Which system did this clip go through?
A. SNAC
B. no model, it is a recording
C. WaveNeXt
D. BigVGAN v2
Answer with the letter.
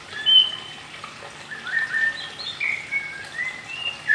B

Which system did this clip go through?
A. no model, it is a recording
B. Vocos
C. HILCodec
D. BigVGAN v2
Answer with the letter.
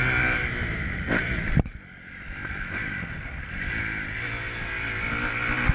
A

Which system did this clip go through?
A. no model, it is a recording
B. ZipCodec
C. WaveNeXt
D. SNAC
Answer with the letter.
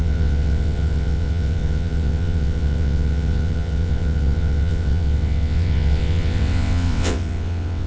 C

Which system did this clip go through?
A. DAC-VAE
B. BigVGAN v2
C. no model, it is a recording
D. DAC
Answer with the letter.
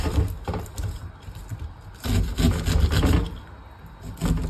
C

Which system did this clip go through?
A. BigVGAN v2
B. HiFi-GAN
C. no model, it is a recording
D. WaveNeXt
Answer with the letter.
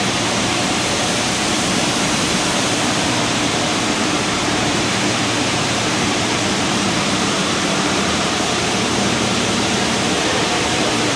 A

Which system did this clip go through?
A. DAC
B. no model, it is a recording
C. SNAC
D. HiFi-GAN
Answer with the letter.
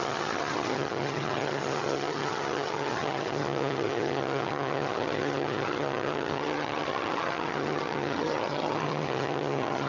D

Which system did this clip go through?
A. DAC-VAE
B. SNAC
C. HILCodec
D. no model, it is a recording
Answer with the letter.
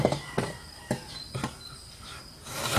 D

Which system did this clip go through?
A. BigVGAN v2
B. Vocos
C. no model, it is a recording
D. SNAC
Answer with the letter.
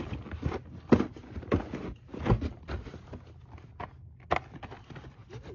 C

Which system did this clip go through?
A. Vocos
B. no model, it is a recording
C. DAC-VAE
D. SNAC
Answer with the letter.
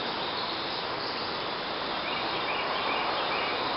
B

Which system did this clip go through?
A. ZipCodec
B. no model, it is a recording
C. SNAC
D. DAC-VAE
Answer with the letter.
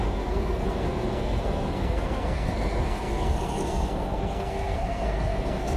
C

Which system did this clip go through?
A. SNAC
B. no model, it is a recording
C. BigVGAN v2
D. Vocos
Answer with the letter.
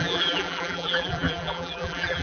C